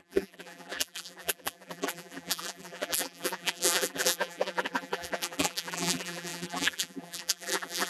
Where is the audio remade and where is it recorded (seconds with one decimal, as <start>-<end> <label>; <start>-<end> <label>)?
0.0-7.9 remade